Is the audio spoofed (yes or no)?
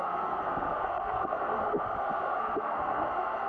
yes